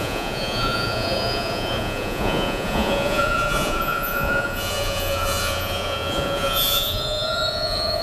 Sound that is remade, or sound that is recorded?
remade